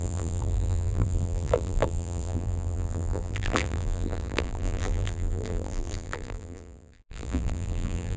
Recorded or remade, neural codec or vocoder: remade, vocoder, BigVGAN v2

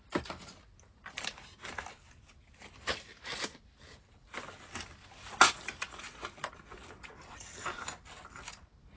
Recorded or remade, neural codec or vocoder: recorded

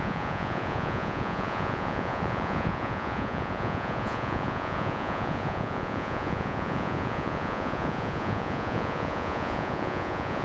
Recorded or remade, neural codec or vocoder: remade, vocoder, Vocos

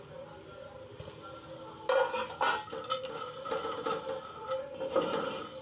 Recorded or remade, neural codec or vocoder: recorded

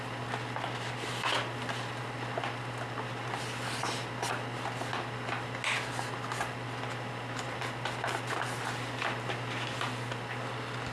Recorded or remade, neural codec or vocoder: recorded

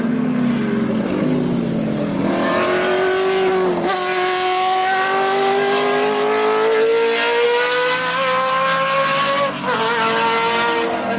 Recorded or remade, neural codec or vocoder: recorded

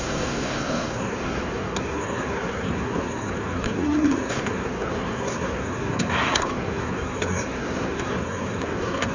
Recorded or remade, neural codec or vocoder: remade, codec, SNAC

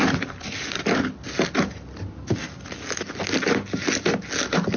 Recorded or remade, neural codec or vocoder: recorded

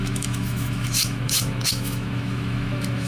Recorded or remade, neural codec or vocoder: remade, autoencoder, DAC-VAE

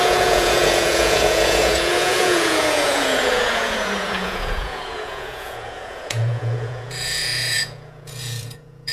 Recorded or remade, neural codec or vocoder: remade, vocoder, Vocos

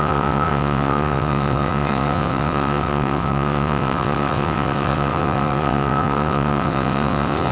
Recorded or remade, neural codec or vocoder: remade, vocoder, WaveNeXt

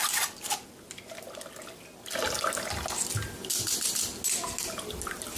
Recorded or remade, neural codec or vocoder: recorded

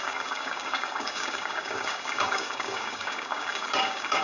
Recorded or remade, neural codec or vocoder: remade, codec, DAC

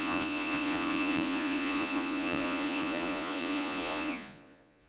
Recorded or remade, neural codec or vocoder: remade, vocoder, Vocos